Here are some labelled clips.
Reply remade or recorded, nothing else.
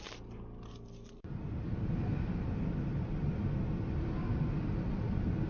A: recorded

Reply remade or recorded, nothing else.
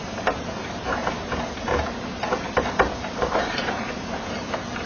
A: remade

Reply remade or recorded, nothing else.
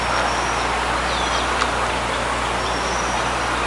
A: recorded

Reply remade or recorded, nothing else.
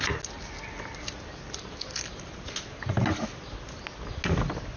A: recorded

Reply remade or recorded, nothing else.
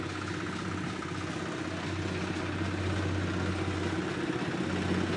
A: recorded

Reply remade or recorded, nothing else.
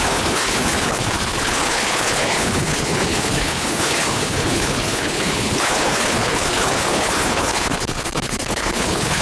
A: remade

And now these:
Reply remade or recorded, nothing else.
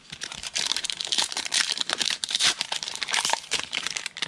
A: remade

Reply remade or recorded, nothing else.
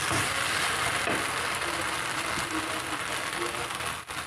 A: recorded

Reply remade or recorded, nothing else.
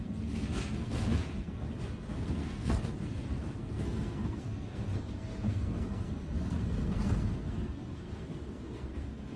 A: remade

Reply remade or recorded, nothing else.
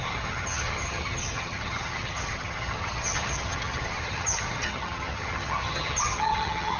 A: remade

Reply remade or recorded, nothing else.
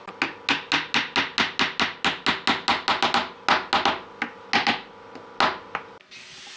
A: recorded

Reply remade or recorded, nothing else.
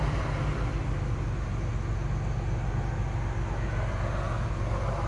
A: recorded